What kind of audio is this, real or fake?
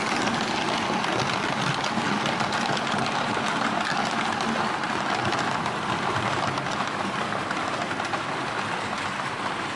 real